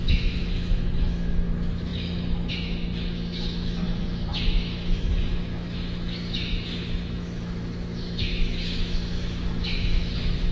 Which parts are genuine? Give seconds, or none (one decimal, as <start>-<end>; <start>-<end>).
none